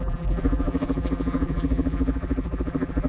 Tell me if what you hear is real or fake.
fake